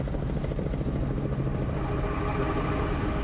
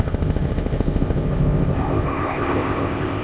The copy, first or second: second